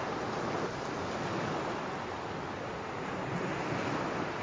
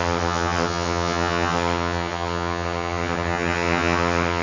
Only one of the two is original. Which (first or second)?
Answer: first